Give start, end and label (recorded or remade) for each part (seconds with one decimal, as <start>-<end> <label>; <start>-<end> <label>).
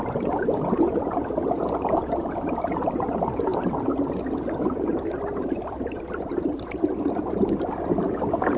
0.0-8.6 recorded